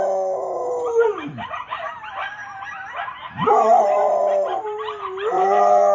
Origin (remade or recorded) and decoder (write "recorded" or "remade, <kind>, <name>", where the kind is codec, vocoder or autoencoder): remade, vocoder, BigVGAN v2